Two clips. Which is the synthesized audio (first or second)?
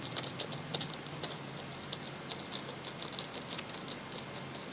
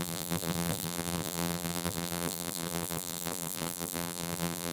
second